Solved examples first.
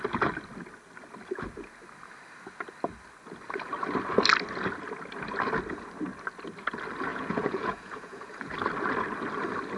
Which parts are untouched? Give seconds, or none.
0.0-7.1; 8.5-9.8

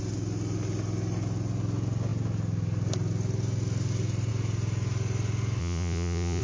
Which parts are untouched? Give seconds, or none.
0.0-5.6